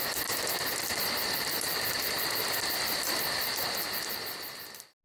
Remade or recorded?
recorded